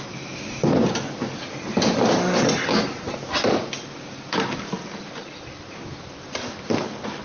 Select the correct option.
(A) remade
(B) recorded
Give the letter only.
B